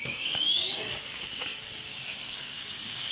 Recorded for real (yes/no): no